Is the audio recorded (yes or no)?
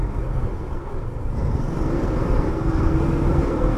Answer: no